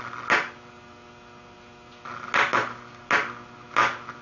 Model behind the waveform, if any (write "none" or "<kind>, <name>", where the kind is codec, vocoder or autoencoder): none